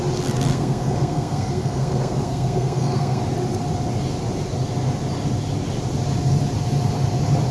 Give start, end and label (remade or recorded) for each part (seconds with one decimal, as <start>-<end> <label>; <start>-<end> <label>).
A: 0.0-0.5 recorded; 0.5-3.2 remade; 3.2-7.5 recorded